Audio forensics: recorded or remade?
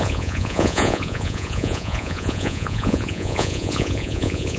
remade